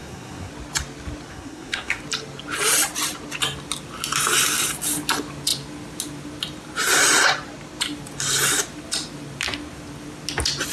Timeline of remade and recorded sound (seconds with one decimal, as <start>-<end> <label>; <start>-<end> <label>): 0.0-0.5 remade; 0.5-1.3 recorded; 1.3-2.0 remade; 2.0-10.7 recorded